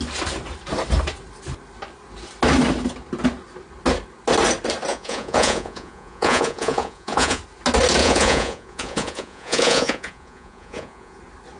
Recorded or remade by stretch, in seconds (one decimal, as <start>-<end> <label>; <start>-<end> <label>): 0.0-4.9 recorded; 4.9-7.4 remade; 7.4-8.0 recorded; 8.0-11.2 remade; 11.2-11.6 recorded